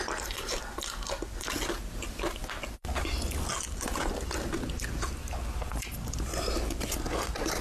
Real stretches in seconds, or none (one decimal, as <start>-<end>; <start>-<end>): 0.0-7.6